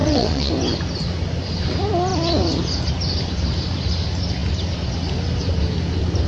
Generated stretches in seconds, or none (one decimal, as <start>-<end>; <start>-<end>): 0.0-0.5